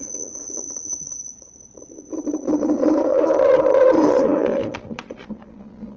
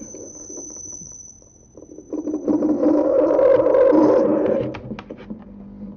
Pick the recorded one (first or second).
second